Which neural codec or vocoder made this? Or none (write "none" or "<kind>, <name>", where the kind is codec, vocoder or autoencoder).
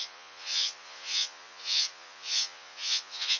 vocoder, Vocos